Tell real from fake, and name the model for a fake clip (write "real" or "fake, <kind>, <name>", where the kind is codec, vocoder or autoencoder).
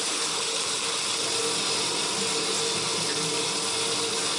real